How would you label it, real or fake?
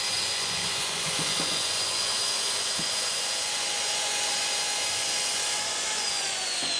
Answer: fake